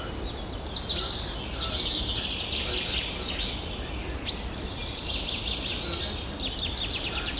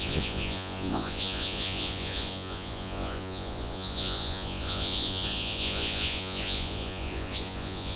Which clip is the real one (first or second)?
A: first